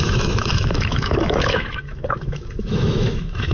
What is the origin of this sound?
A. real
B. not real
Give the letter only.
B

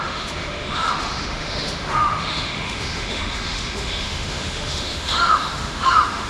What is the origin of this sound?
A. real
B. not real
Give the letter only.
B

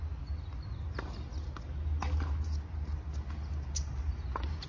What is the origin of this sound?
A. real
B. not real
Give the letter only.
A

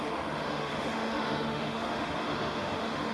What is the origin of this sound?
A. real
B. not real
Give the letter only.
B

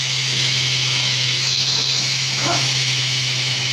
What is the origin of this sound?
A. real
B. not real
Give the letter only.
B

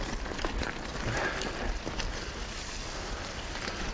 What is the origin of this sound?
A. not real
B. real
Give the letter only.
B